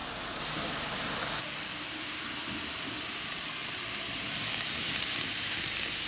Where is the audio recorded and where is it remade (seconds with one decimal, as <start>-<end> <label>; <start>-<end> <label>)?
0.0-6.1 remade